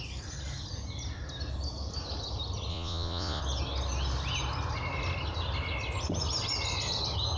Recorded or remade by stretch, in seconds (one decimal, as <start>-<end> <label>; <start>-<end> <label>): 0.0-2.7 recorded; 2.7-3.4 remade; 3.4-7.4 recorded

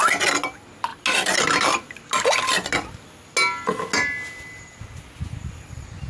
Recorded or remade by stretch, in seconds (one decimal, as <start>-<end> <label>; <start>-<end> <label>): 0.0-6.1 recorded

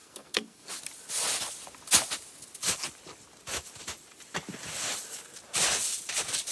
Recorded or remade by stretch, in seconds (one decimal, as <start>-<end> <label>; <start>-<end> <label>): 0.0-0.7 remade; 0.7-6.5 recorded

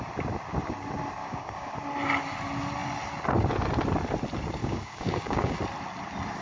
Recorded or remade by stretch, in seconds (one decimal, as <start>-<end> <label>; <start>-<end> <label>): 0.0-1.2 recorded; 1.2-1.7 remade; 1.7-4.6 recorded; 4.6-5.6 remade; 5.6-6.4 recorded

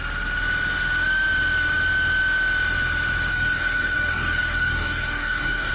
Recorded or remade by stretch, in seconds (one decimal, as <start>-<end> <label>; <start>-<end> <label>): 0.0-3.3 recorded; 3.3-5.7 remade

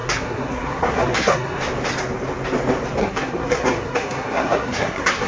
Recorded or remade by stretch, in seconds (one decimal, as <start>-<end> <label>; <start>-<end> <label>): 0.0-1.6 remade; 1.6-3.0 recorded; 3.0-5.3 remade

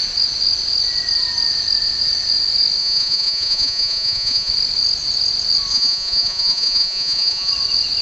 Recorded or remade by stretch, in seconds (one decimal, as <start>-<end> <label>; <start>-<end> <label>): 0.0-2.8 recorded; 2.8-4.5 remade; 4.5-5.7 recorded; 5.7-7.5 remade; 7.5-8.0 recorded